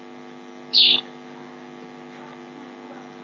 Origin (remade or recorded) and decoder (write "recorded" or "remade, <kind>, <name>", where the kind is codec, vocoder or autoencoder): recorded